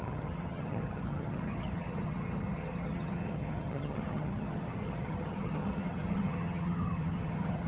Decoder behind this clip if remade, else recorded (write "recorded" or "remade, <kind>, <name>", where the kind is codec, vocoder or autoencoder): remade, vocoder, HiFi-GAN